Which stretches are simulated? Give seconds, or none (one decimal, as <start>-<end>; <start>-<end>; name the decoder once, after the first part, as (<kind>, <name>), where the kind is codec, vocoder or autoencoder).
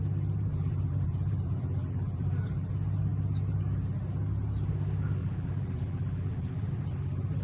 0.5-2.7 (vocoder, BigVGAN v2); 5.2-6.7